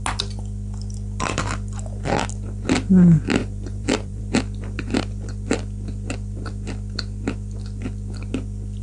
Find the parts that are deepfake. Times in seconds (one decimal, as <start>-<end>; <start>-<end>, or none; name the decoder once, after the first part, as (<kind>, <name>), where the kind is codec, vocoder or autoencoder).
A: 3.4-4.2 (vocoder, BigVGAN v2)